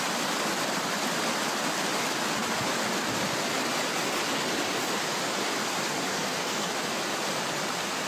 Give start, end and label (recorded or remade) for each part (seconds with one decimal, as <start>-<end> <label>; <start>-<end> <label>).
0.0-6.1 recorded; 6.1-6.7 remade; 6.7-8.1 recorded